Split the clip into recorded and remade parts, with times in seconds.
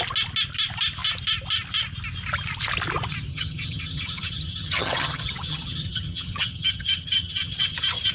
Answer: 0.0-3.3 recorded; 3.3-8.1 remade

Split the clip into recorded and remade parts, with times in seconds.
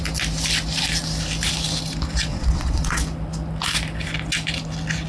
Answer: 0.0-2.3 recorded; 2.3-3.0 remade; 3.0-5.1 recorded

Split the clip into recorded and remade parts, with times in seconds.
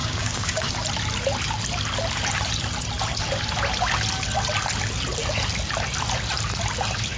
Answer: 0.0-0.7 remade; 0.7-7.2 recorded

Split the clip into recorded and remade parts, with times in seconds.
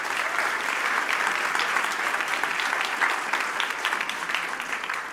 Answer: 0.0-5.1 recorded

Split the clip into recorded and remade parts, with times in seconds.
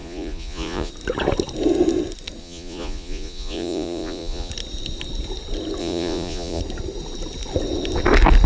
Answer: 0.0-0.9 remade; 0.9-2.4 recorded; 2.4-4.5 remade; 4.5-5.8 recorded; 5.8-6.6 remade; 6.6-8.5 recorded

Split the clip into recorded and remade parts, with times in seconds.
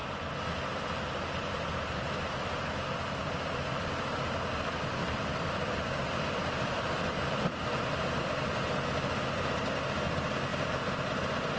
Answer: 0.0-5.0 recorded; 5.0-8.1 remade; 8.1-11.6 recorded